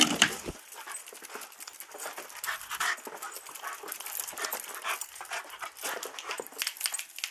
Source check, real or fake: real